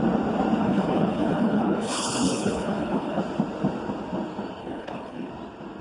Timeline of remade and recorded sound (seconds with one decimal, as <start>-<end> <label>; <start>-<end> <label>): 0.0-0.6 recorded; 0.6-3.2 remade; 3.2-4.6 recorded; 4.6-5.3 remade; 5.3-5.8 recorded